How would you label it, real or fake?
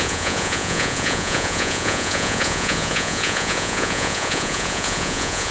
fake